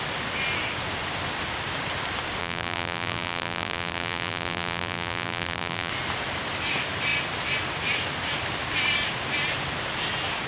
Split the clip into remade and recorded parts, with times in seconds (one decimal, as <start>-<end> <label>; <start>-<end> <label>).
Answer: 0.0-2.4 recorded; 2.4-5.9 remade; 5.9-10.5 recorded